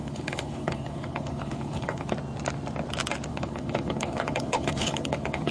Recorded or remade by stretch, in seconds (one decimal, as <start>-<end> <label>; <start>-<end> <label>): 0.0-2.1 remade; 2.1-3.3 recorded; 3.3-5.5 remade